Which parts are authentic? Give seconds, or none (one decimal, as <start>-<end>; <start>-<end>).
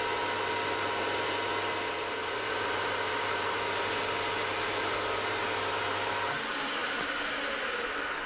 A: 0.0-2.2; 3.8-6.8; 7.5-8.3